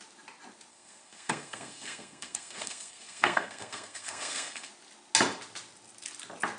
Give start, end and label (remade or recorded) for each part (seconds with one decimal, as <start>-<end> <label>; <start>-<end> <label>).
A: 0.0-0.7 recorded; 0.7-4.7 remade; 4.7-6.6 recorded